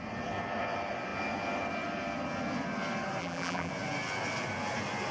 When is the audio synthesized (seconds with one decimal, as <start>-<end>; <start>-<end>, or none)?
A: 3.2-3.7